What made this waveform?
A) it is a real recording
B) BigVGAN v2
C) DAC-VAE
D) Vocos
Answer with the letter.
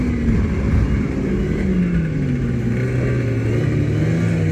A